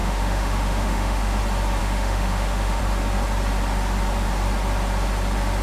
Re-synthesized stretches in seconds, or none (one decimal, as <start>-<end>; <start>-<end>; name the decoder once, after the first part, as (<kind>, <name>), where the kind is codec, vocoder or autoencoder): 0.0-1.4 (autoencoder, DAC-VAE); 1.8-2.8